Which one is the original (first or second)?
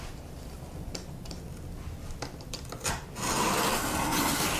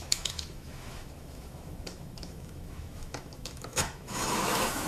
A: first